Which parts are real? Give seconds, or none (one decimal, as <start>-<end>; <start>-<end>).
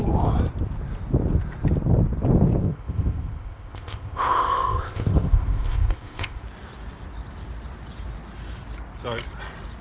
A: 0.0-2.6; 6.4-9.8